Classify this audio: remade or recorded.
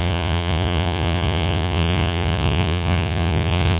remade